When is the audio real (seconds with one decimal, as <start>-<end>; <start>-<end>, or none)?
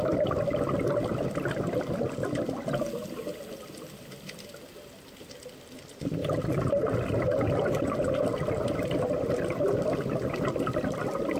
0.0-11.4